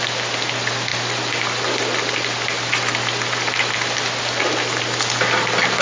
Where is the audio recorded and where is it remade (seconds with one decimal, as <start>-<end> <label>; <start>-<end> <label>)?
0.0-5.8 recorded